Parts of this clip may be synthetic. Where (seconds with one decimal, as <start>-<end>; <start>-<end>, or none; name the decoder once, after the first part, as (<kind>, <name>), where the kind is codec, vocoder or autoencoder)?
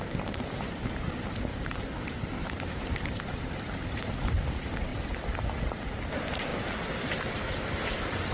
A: 0.0-4.9 (vocoder, BigVGAN v2); 6.1-8.3